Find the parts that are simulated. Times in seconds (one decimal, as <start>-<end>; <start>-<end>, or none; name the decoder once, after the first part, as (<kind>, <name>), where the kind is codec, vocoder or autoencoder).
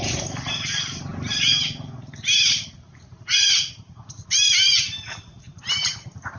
0.0-6.4 (vocoder, BigVGAN v2)